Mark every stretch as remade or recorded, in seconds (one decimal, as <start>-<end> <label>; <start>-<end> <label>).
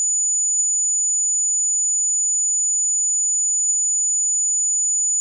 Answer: 0.0-5.2 recorded